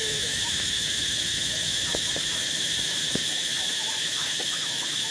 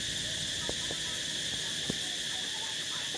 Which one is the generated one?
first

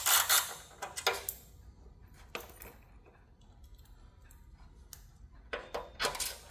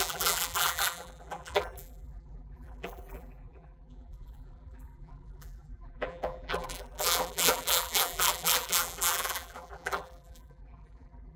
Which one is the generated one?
second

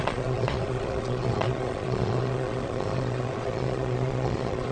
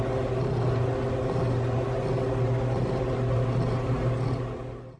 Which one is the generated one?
first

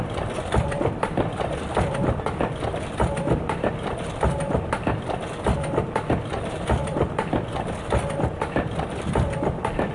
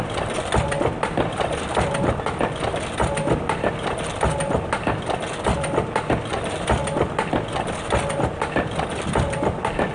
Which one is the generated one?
first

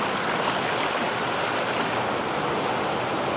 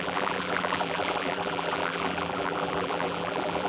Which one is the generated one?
second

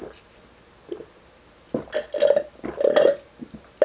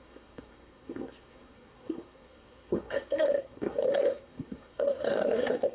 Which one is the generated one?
second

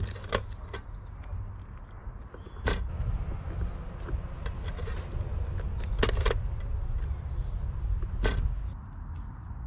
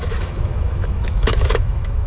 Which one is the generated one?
second